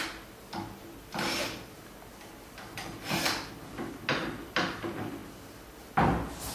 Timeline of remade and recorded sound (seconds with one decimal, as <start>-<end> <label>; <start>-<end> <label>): 0.0-6.5 recorded